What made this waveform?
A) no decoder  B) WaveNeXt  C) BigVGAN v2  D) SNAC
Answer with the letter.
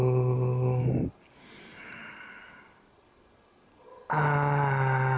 A